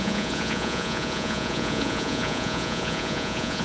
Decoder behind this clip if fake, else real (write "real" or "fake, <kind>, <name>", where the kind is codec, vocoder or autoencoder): fake, vocoder, Vocos